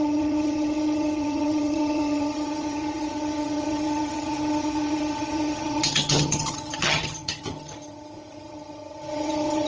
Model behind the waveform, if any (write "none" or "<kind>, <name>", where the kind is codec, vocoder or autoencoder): vocoder, HiFi-GAN